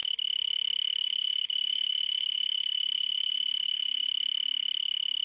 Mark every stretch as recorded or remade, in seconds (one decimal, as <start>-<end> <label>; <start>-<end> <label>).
0.0-1.0 recorded; 1.0-4.1 remade; 4.1-5.2 recorded